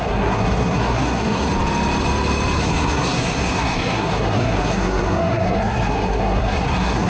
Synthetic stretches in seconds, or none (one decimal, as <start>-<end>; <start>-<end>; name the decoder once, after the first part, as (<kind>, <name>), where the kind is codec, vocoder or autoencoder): 0.0-1.5 (codec, SNAC); 2.6-7.1